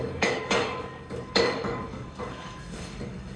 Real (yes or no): no